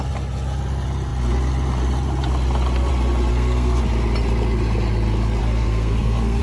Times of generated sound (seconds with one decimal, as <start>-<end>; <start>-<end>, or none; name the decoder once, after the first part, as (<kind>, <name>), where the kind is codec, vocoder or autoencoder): 3.3-3.8 (codec, SNAC); 5.4-6.4